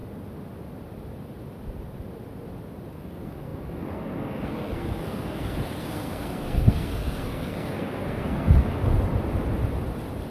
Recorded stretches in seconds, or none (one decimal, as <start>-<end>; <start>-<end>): 0.0-2.9; 8.9-10.3

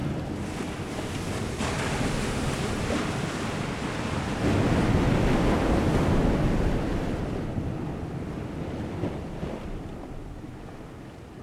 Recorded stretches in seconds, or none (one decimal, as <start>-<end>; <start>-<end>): 0.0-11.4

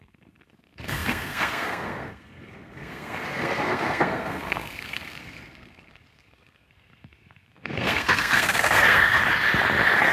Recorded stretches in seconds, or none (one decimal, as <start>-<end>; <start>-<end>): 9.2-10.1

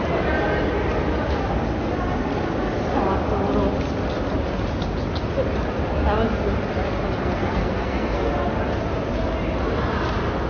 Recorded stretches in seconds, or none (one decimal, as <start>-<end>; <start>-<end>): 0.0-7.2; 8.3-10.5

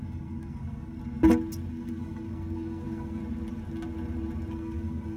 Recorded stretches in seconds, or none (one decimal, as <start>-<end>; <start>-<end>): 1.0-1.7; 3.2-4.5

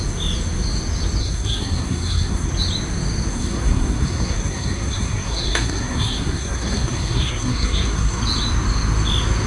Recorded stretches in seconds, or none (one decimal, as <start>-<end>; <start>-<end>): 0.0-1.2; 2.5-3.3; 8.2-9.5

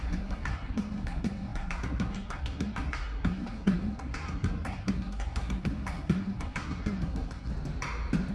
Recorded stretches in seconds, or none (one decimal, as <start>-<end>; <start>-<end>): 7.5-8.3